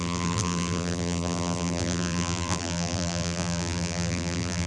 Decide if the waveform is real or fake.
fake